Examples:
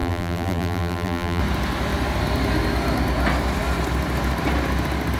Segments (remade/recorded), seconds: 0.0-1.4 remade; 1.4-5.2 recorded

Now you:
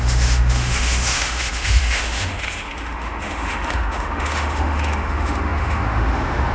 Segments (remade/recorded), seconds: 0.0-6.5 remade